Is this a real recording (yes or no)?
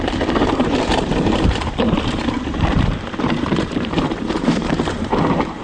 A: no